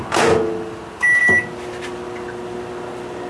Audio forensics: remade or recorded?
recorded